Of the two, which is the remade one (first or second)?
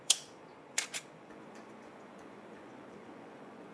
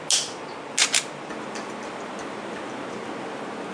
first